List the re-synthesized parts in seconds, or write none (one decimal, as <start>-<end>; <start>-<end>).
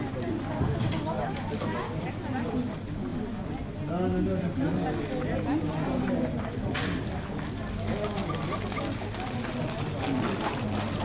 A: none